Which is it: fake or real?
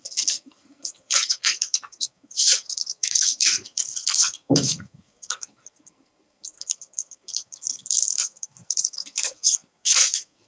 fake